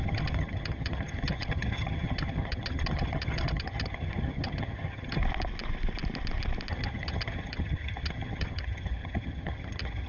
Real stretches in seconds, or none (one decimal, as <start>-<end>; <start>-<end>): 5.2-6.7